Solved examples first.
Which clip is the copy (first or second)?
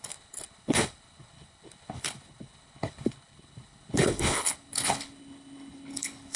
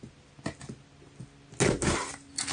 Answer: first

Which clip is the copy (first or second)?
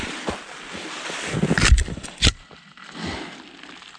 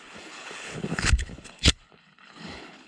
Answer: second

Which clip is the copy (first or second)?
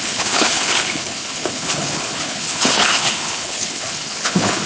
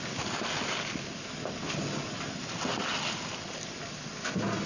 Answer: first